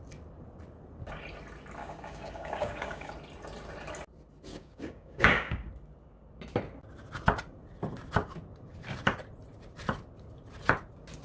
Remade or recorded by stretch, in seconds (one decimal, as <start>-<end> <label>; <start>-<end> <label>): 0.0-1.8 recorded; 1.8-3.1 remade; 3.1-4.5 recorded; 4.5-5.7 remade; 5.7-11.2 recorded